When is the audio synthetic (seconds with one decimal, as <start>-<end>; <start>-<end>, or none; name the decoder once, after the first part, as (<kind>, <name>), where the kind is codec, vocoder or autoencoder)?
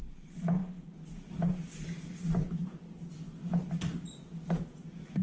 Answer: none